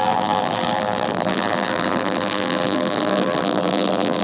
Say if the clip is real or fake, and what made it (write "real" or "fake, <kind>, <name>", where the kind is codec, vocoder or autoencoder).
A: fake, vocoder, BigVGAN v2